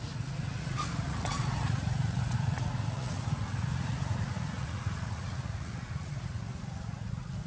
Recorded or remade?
remade